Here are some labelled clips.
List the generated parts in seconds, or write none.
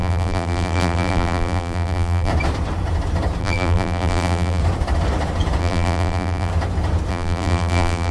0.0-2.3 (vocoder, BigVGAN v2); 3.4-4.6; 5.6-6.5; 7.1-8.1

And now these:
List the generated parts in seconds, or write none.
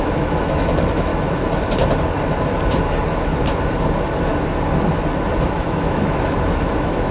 0.0-1.1 (autoencoder, DAC-VAE); 5.4-7.1